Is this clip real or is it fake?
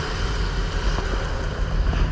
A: real